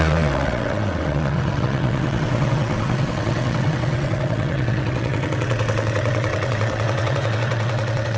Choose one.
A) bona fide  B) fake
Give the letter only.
B